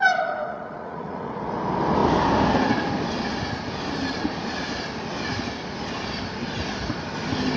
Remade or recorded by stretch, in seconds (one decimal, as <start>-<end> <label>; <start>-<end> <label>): 0.0-0.5 recorded; 0.5-1.3 remade; 1.3-7.6 recorded